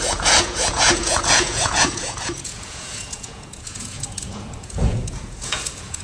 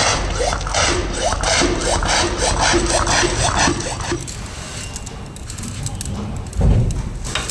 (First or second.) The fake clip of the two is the first